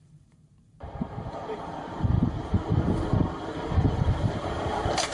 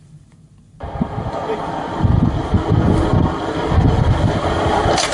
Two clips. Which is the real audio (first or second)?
second